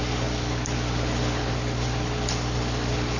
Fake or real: fake